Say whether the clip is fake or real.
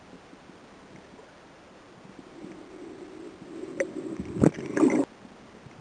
real